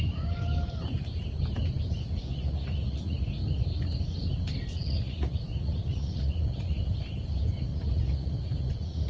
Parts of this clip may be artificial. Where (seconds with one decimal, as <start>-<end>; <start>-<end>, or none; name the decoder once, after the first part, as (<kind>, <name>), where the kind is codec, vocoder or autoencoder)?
2.3-3.2 (vocoder, Vocos); 4.7-6.8; 7.7-9.1